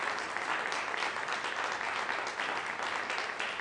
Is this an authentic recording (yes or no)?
yes